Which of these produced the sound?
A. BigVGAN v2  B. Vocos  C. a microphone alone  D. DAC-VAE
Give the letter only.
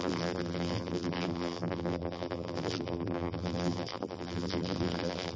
A